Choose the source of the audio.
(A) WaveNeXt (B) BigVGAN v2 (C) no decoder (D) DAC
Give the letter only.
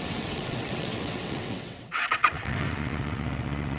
A